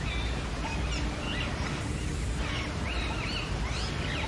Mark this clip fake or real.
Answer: real